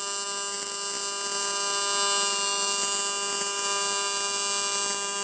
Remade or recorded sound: recorded